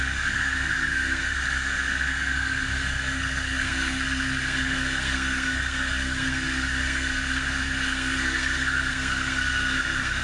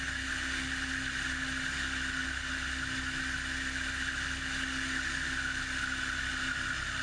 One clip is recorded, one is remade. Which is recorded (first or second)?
second